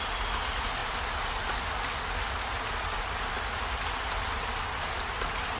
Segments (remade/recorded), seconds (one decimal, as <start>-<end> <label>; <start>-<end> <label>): 0.0-5.6 recorded